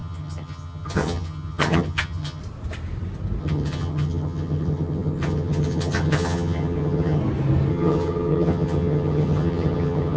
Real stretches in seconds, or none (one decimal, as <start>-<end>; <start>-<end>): 2.4-3.4; 7.2-7.7